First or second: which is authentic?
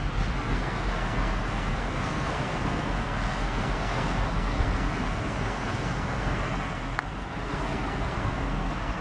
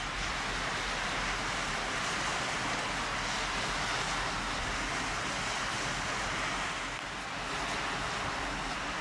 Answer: second